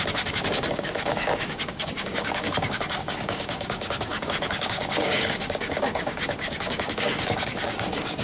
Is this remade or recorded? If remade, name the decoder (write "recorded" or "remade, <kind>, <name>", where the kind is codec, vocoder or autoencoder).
remade, codec, DAC